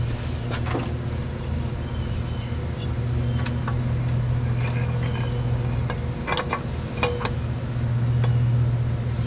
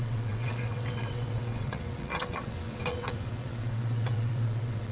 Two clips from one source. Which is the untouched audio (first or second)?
first